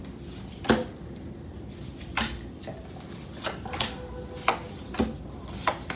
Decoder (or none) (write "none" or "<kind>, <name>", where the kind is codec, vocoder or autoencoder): none